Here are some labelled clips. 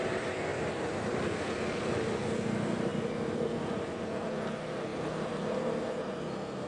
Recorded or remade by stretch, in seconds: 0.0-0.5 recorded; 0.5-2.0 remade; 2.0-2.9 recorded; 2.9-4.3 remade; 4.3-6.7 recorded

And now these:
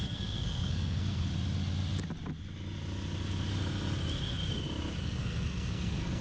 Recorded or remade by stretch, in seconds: 0.0-1.3 remade; 1.3-5.0 recorded; 5.0-6.2 remade